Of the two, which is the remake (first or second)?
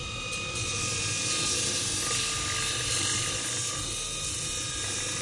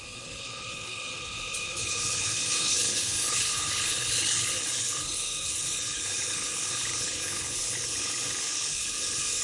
second